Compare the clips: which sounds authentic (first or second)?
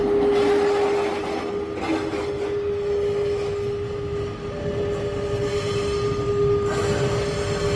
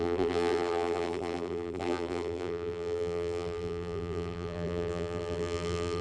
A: first